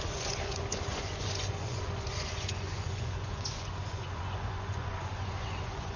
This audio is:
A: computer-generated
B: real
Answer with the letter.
A